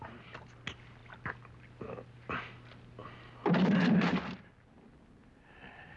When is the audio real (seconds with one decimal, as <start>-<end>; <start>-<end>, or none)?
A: 0.0-6.0